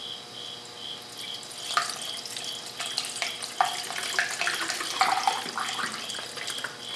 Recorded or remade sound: recorded